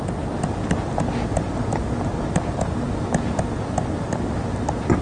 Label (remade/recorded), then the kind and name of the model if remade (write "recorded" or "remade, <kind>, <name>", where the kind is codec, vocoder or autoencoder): recorded